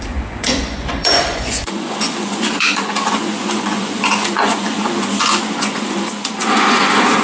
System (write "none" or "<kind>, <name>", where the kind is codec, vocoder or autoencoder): vocoder, Vocos